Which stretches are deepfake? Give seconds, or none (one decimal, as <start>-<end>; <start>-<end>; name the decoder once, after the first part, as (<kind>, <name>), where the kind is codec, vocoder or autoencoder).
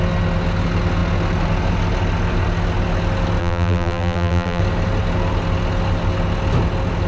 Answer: 3.4-4.6 (vocoder, BigVGAN v2)